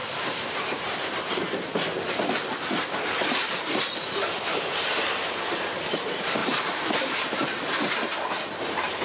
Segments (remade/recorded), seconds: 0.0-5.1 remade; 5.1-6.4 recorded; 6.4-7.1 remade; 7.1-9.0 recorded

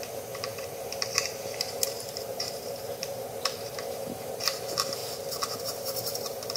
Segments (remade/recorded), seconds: 0.0-5.0 remade; 5.0-5.6 recorded; 5.6-6.6 remade

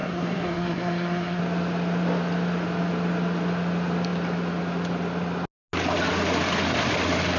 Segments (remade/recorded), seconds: 0.0-1.4 remade; 1.4-7.4 recorded

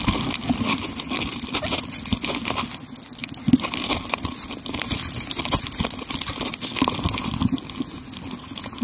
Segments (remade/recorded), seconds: 0.0-3.2 recorded; 3.2-5.4 remade; 5.4-8.8 recorded

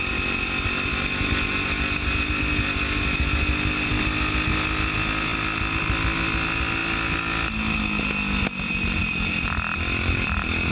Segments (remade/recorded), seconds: 0.0-9.0 recorded; 9.0-10.7 remade

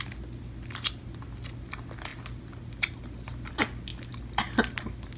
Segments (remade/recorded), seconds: 0.0-5.2 recorded

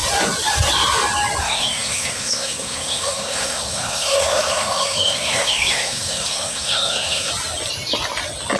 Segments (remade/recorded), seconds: 0.0-1.4 recorded; 1.4-7.3 remade; 7.3-8.6 recorded